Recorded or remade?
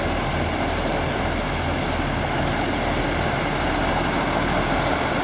recorded